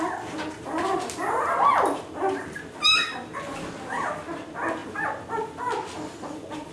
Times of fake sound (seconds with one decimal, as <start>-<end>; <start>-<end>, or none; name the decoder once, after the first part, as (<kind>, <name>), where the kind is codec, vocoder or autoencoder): none